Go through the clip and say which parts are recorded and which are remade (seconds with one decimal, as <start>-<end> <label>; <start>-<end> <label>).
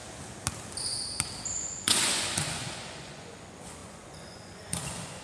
0.0-1.6 recorded; 1.6-5.2 remade